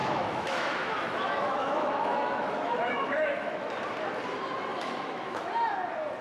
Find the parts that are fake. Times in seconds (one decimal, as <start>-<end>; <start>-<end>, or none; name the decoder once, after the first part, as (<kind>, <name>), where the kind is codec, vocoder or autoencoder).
0.0-3.7 (autoencoder, DAC-VAE); 4.7-5.5